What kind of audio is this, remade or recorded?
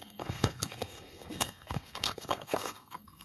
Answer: remade